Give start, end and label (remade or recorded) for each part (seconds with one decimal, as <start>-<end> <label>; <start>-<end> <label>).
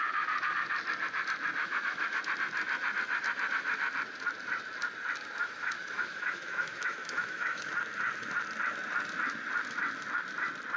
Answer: 0.0-1.6 recorded; 1.6-2.2 remade; 2.2-5.4 recorded; 5.4-7.7 remade; 7.7-10.8 recorded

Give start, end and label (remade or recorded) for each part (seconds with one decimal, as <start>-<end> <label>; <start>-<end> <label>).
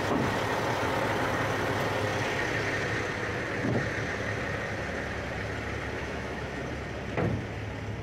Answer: 0.0-6.0 recorded; 6.0-6.6 remade; 6.6-8.0 recorded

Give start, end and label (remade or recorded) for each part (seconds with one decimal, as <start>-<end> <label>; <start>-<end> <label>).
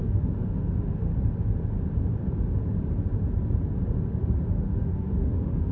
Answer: 0.0-1.1 remade; 1.1-4.5 recorded; 4.5-5.7 remade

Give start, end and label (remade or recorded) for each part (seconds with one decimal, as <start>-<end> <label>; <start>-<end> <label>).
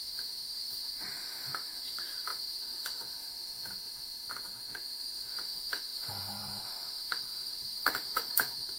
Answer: 0.0-8.8 remade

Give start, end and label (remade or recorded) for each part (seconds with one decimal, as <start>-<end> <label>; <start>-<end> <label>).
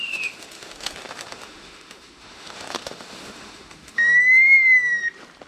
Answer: 0.0-5.0 remade; 5.0-5.5 recorded